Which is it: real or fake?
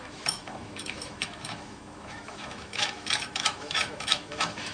fake